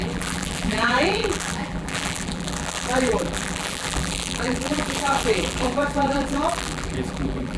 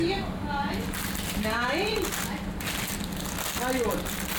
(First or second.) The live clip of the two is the second